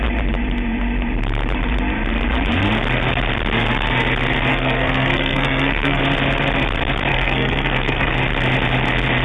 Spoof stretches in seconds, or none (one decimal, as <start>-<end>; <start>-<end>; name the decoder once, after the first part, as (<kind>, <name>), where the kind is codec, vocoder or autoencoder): 4.5-6.0 (codec, SNAC); 7.1-8.1